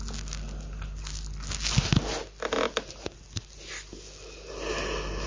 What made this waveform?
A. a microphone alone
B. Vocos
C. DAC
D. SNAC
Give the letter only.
A